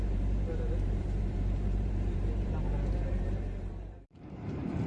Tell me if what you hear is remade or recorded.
remade